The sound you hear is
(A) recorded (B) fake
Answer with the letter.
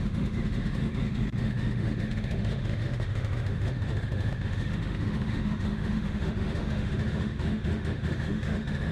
B